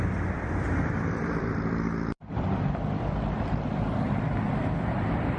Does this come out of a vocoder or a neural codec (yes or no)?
yes